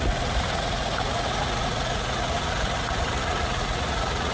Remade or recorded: remade